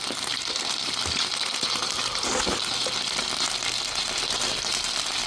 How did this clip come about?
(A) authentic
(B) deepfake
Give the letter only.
A